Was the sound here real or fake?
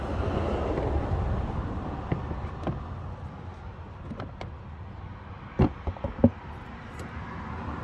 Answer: real